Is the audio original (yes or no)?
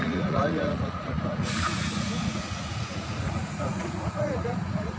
no